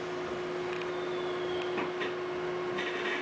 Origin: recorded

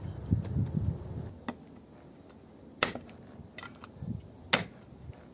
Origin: recorded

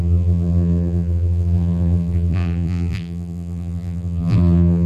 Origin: remade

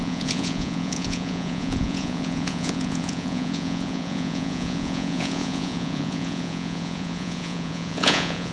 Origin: remade